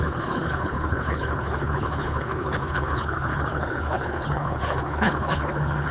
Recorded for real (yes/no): no